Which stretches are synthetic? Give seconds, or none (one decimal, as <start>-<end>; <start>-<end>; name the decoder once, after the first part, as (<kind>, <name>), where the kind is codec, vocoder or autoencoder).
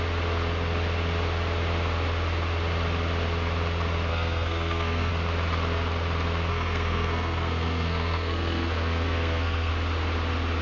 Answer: 4.1-5.1 (codec, SNAC); 6.5-9.7